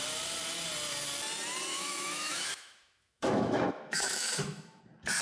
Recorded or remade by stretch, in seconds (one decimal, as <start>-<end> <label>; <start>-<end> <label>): 0.0-1.7 recorded; 1.7-4.8 remade; 4.8-5.2 recorded